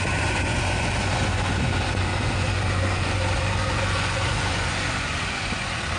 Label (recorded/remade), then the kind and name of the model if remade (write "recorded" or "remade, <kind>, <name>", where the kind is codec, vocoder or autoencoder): remade, vocoder, Vocos